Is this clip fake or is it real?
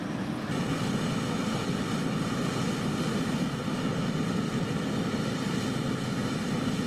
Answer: real